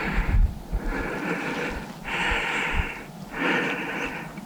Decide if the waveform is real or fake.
fake